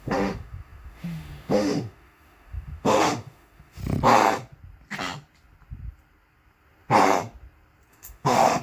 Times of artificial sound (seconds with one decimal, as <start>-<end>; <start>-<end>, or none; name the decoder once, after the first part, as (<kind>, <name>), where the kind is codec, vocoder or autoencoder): 0.0-3.8 (autoencoder, DAC-VAE); 7.9-8.6

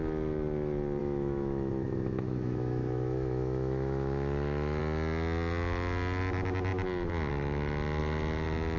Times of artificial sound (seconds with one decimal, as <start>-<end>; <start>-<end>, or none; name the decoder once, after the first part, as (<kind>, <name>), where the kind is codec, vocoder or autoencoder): 1.0-4.8 (autoencoder, DAC-VAE)

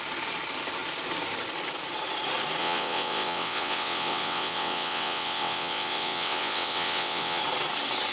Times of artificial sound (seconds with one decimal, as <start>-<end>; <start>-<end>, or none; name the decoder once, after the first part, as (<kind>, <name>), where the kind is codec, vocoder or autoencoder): 2.6-7.4 (vocoder, WaveNeXt)